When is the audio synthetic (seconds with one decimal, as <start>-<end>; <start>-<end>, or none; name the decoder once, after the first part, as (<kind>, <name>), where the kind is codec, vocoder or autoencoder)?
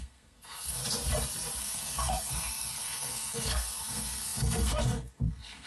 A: 0.0-0.8 (codec, SNAC); 1.6-5.7